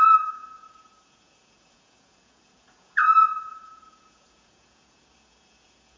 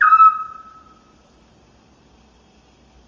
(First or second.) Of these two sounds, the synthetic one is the first